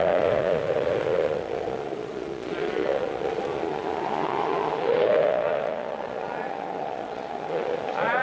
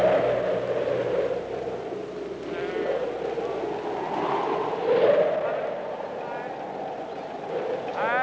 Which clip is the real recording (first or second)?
second